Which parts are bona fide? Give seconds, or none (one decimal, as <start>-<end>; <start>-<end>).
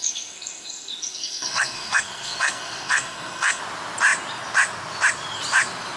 3.6-6.0